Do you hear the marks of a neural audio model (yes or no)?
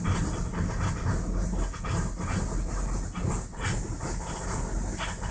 no